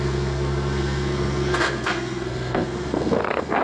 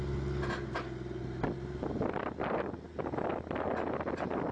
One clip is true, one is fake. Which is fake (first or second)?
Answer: first